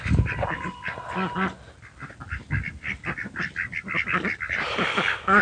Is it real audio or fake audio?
real